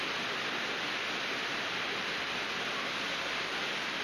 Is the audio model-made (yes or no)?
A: no